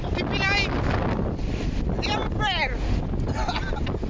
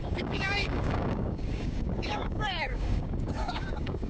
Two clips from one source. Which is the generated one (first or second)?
second